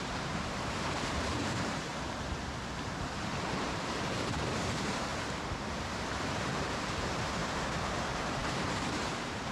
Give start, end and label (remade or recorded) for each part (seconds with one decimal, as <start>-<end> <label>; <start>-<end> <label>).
0.0-1.9 remade; 1.9-3.5 recorded; 3.5-5.1 remade; 5.1-6.2 recorded; 6.2-7.4 remade; 7.4-7.9 recorded; 7.9-9.5 remade